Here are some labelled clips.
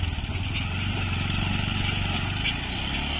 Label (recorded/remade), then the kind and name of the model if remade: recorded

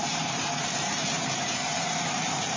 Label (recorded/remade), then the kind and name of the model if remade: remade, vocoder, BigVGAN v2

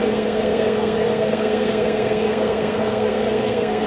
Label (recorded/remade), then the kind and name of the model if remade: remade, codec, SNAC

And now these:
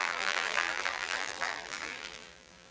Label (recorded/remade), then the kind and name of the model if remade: remade, vocoder, BigVGAN v2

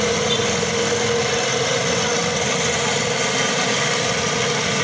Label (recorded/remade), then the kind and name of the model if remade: recorded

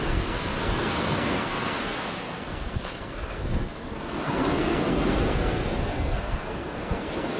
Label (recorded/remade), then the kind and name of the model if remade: remade, codec, SNAC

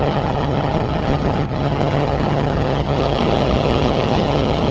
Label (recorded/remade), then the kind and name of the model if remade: remade, vocoder, HiFi-GAN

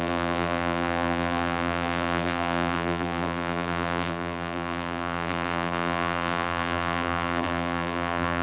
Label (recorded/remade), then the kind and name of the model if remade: remade, vocoder, BigVGAN v2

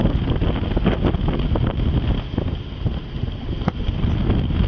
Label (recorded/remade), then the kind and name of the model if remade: recorded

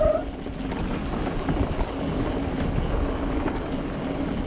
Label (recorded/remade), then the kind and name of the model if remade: recorded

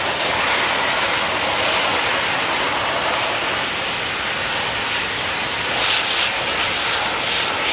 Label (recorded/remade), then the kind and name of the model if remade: remade, vocoder, BigVGAN v2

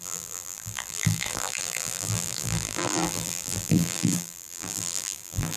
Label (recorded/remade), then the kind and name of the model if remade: remade, vocoder, BigVGAN v2